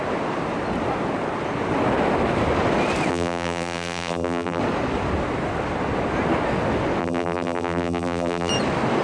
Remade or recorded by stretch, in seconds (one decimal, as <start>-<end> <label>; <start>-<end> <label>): 0.0-3.1 recorded; 3.1-4.6 remade; 4.6-7.0 recorded; 7.0-8.5 remade; 8.5-9.0 recorded